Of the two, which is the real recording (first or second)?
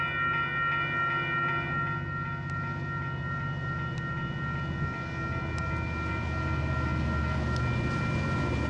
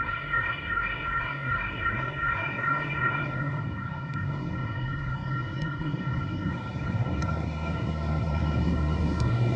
first